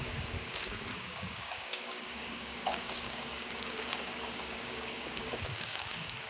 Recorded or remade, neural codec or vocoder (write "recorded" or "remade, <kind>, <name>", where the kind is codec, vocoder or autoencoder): remade, codec, DAC